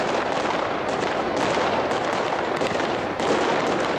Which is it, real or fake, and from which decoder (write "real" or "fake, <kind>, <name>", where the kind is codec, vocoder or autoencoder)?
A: real